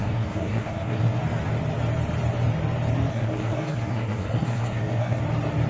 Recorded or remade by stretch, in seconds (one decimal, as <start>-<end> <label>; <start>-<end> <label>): 0.0-1.2 remade; 1.2-3.1 recorded; 3.1-5.2 remade; 5.2-5.7 recorded

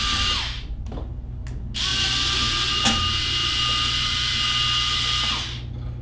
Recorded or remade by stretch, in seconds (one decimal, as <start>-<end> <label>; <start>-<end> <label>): 0.0-3.4 recorded; 3.4-4.3 remade; 4.3-6.0 recorded